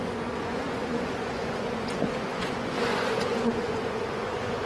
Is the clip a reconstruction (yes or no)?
yes